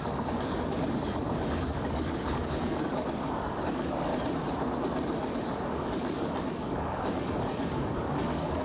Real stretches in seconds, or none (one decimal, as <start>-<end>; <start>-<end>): 4.1-5.2